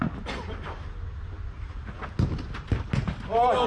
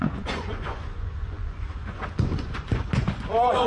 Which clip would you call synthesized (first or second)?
second